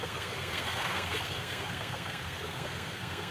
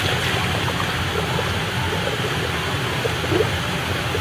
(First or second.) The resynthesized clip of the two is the first